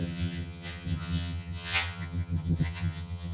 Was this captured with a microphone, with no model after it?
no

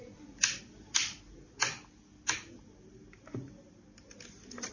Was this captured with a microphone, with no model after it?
yes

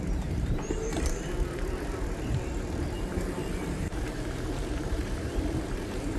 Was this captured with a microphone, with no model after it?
no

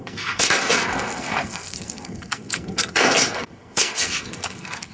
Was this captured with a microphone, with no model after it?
no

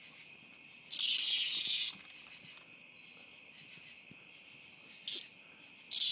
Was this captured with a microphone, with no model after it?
yes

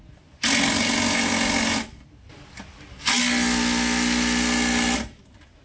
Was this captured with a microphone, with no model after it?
yes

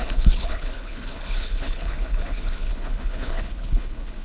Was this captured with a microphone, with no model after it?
no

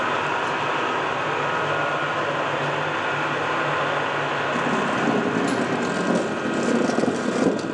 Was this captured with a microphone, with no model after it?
yes